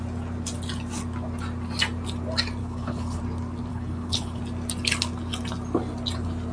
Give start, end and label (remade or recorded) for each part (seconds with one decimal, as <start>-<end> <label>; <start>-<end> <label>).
0.0-2.6 recorded; 2.6-3.2 remade; 3.2-3.7 recorded; 3.7-4.4 remade; 4.4-6.5 recorded